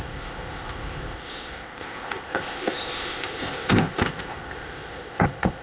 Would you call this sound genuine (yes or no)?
no